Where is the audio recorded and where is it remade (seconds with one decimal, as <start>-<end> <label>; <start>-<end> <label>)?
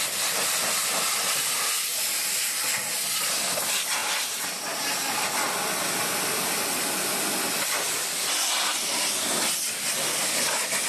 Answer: 0.0-10.9 recorded